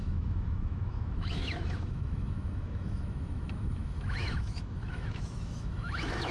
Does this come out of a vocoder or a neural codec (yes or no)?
yes